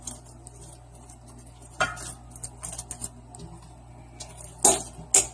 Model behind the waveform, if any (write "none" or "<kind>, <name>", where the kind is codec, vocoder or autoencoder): none